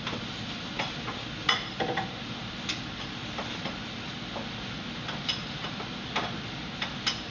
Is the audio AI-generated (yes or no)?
no